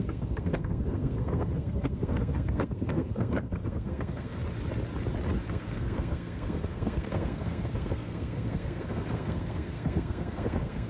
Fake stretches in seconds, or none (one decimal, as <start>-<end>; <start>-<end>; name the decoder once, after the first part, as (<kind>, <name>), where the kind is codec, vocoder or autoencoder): 0.0-4.4 (codec, SNAC); 5.5-10.9